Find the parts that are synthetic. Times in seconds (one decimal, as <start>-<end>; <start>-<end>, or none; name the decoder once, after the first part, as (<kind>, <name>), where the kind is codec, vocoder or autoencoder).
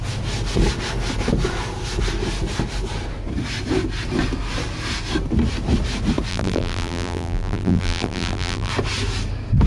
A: 6.3-8.7 (vocoder, BigVGAN v2)